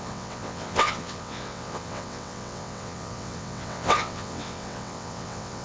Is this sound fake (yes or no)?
yes